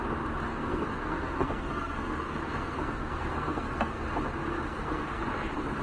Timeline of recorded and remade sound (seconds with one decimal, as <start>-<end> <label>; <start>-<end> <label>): 0.0-0.5 recorded; 0.5-4.0 remade; 4.0-4.4 recorded; 4.4-5.2 remade; 5.2-5.8 recorded